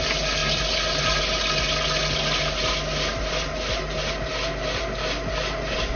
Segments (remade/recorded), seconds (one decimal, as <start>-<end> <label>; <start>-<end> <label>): 0.0-6.0 recorded

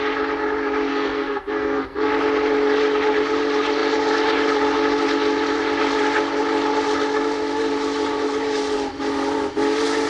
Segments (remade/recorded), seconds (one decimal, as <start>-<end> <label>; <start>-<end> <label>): 0.0-0.9 recorded; 0.9-2.1 remade; 2.1-10.1 recorded

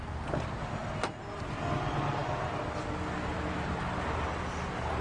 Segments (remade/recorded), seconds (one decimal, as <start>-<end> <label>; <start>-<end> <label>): 0.0-5.0 recorded

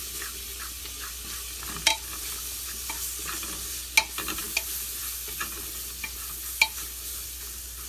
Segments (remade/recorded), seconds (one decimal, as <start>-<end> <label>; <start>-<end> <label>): 0.0-7.9 recorded

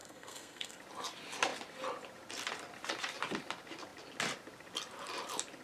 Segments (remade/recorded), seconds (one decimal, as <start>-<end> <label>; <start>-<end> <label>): 0.0-0.8 remade; 0.8-5.6 recorded

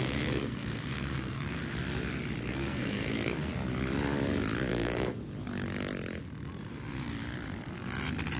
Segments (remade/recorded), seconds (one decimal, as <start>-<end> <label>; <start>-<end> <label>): 0.0-1.6 remade; 1.6-2.4 recorded; 2.4-3.5 remade; 3.5-4.7 recorded; 4.7-5.2 remade; 5.2-8.4 recorded

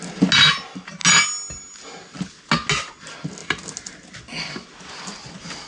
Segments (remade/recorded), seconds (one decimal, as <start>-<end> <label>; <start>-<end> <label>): 0.0-5.7 recorded

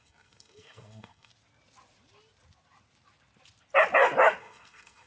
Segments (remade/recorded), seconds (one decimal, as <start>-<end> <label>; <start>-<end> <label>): 0.0-1.3 remade; 1.3-4.4 recorded; 4.4-5.1 remade